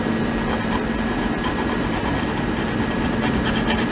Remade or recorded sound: recorded